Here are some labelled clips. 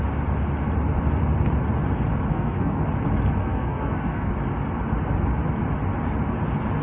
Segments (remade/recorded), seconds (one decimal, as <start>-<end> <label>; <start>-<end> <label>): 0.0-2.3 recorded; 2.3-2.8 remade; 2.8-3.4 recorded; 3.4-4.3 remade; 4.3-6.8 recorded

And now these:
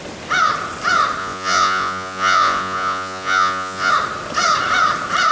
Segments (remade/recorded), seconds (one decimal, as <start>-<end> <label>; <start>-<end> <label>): 0.0-1.2 recorded; 1.2-3.9 remade; 3.9-5.3 recorded

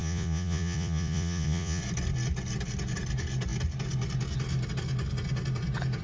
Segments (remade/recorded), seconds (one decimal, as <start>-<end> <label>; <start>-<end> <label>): 0.0-1.8 remade; 1.8-6.0 recorded

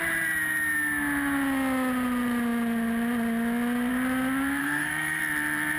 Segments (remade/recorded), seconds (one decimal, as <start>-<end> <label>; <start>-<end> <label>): 0.0-4.6 recorded; 4.6-5.2 remade; 5.2-5.8 recorded

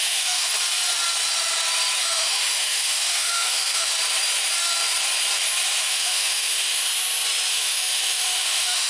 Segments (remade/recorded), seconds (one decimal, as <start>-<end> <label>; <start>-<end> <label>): 0.0-0.5 remade; 0.5-2.0 recorded; 2.0-3.9 remade; 3.9-5.8 recorded; 5.8-6.9 remade; 6.9-7.5 recorded; 7.5-8.9 remade